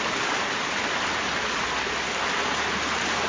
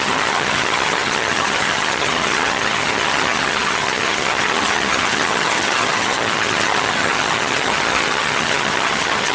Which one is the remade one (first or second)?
second